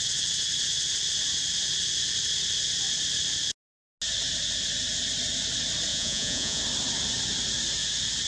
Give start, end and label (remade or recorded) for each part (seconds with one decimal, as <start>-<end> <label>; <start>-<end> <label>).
0.0-5.9 recorded; 5.9-6.6 remade; 6.6-8.3 recorded